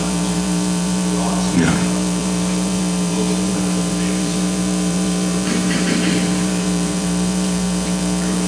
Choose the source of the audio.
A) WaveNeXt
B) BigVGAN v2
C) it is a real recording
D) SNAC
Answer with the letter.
B